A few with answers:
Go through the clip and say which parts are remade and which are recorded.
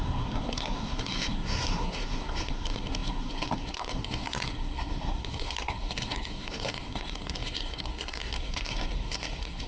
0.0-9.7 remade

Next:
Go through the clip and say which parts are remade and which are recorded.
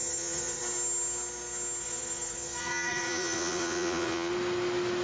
0.0-0.6 remade; 0.6-1.8 recorded; 1.8-4.3 remade; 4.3-5.0 recorded